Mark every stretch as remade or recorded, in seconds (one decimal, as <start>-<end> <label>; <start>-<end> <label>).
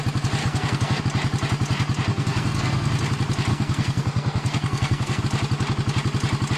0.0-0.4 recorded; 0.4-1.0 remade; 1.0-2.1 recorded; 2.1-2.9 remade; 2.9-3.5 recorded; 3.5-5.2 remade; 5.2-6.6 recorded